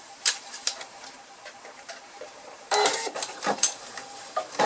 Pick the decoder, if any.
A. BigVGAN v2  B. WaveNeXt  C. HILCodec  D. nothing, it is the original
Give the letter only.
A